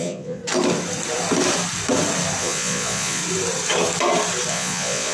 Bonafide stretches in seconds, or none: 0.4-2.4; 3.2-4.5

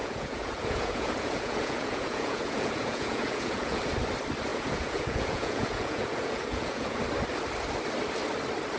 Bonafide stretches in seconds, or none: 3.8-4.5; 7.0-8.8

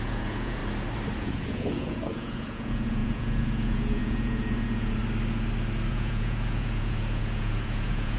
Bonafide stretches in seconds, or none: 0.6-1.2; 5.0-5.9

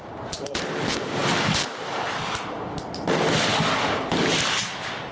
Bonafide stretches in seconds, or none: 0.0-5.1

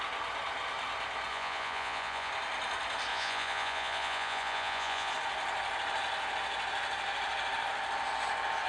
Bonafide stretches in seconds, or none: 0.0-1.3; 2.3-3.1; 5.1-8.7

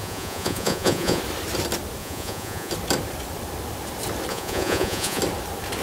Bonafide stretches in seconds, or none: 1.2-2.0; 2.7-4.3; 5.2-5.8

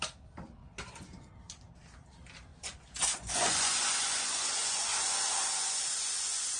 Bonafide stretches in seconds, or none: 0.0-0.6; 1.3-2.5